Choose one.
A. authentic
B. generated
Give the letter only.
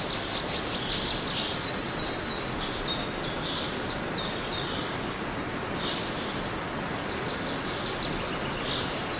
A